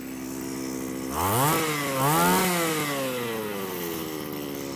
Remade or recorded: recorded